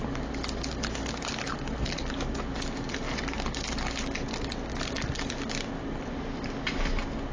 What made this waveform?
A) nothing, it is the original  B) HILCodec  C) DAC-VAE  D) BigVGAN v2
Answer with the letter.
A